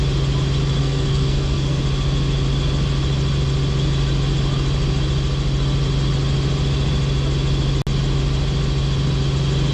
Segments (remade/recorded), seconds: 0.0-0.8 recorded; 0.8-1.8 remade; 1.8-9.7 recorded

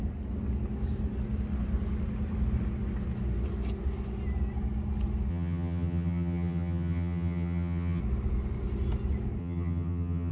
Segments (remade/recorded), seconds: 0.0-5.3 recorded; 5.3-8.0 remade; 8.0-9.4 recorded; 9.4-10.3 remade

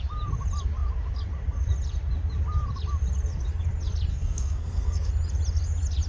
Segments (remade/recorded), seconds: 0.0-4.1 recorded; 4.1-5.1 remade; 5.1-6.1 recorded